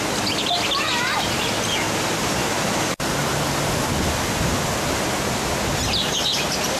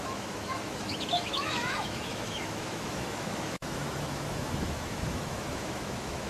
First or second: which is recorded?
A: first